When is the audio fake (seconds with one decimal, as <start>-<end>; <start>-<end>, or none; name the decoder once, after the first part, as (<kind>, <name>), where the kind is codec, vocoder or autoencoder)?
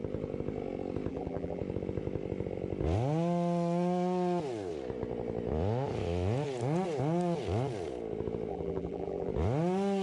1.1-1.6 (vocoder, BigVGAN v2); 8.5-9.3